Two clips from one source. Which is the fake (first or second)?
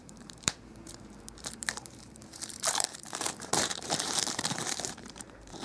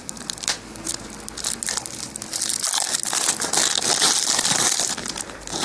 first